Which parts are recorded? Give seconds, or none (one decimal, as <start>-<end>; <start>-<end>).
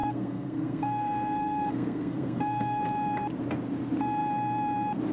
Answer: 2.8-5.1